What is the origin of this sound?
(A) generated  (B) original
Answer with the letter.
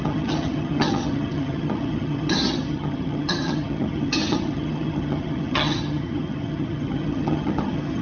A